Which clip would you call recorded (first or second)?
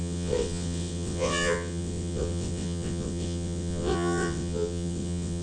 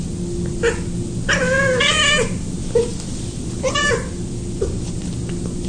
second